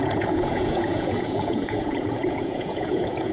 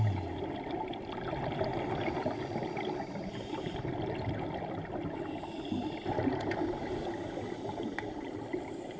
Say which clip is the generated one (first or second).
first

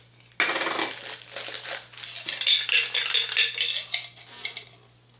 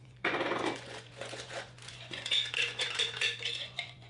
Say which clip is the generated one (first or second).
second